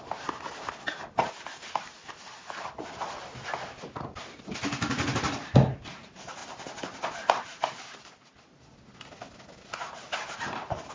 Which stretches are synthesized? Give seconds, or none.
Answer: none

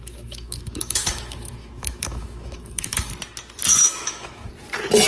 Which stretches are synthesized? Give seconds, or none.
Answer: 0.0-3.1; 3.7-4.5

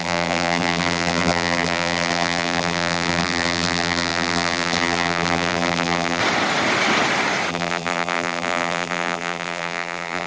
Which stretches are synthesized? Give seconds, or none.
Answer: 0.0-6.2; 7.5-10.3

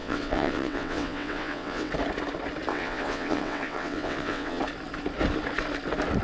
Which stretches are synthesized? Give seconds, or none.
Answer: 0.0-1.9; 2.7-4.6